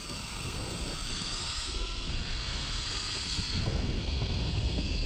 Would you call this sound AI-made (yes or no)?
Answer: yes